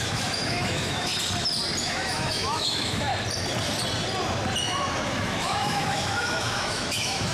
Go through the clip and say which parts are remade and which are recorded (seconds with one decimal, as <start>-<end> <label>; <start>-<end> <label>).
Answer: 0.0-1.1 remade; 1.1-1.8 recorded; 1.8-3.1 remade; 3.1-4.6 recorded; 4.6-7.3 remade